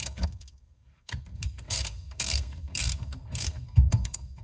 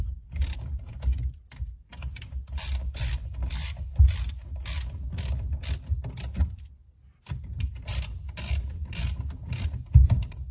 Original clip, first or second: second